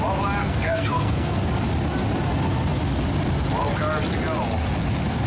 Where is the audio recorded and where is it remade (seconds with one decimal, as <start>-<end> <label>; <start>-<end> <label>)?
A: 0.0-0.4 recorded; 0.4-1.4 remade; 1.4-5.3 recorded